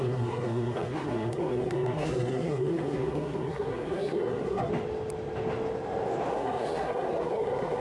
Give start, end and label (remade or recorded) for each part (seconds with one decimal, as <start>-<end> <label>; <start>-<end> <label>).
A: 0.0-4.7 remade; 4.7-6.3 recorded; 6.3-7.8 remade